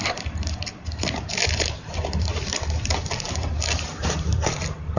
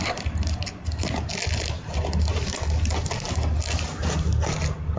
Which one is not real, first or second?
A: first